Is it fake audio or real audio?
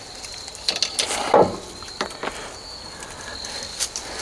real